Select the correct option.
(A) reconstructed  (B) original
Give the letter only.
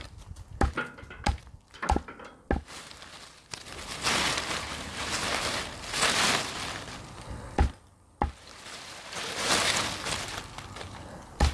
B